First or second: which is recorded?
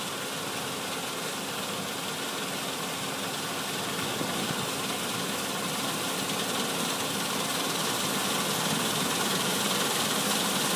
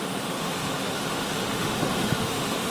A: first